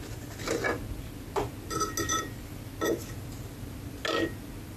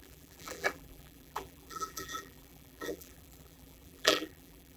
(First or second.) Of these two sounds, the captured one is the first